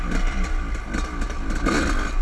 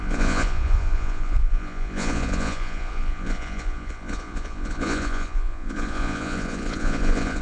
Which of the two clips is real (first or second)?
first